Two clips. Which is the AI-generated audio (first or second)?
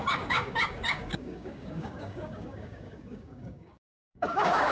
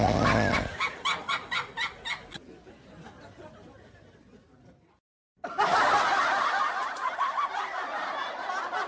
first